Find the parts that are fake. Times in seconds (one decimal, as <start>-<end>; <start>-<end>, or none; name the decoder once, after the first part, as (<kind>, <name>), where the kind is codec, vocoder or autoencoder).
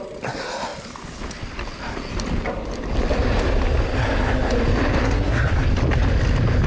5.0-5.5 (codec, SNAC)